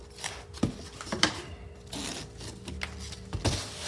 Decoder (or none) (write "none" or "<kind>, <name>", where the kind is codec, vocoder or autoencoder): none